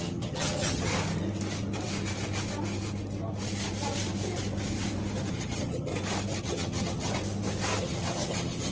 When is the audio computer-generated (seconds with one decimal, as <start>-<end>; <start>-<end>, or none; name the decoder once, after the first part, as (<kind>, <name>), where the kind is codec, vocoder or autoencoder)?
0.0-0.9 (vocoder, HiFi-GAN); 5.3-5.9; 6.4-7.1; 7.8-8.7